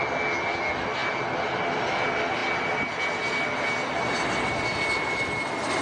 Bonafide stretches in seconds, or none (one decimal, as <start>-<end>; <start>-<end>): 0.0-5.8